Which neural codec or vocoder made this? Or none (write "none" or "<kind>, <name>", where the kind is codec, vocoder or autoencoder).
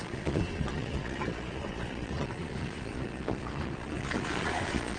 vocoder, Vocos